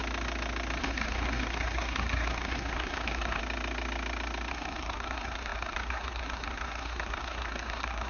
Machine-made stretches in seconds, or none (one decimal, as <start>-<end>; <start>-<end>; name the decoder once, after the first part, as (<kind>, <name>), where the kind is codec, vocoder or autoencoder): 0.8-3.4 (codec, SNAC); 4.5-8.1